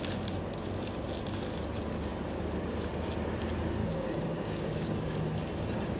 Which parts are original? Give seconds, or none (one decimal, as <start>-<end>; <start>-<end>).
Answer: 0.0-3.8; 5.2-6.0